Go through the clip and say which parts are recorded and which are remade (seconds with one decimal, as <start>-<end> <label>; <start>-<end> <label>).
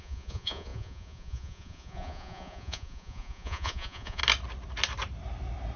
0.0-4.2 remade; 4.2-5.8 recorded